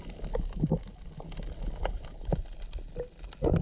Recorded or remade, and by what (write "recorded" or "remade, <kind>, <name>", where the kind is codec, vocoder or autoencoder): recorded